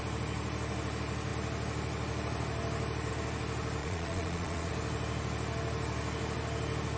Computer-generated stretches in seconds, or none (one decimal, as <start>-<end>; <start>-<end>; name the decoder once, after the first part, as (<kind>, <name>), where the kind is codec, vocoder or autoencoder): 3.8-4.7 (vocoder, Vocos)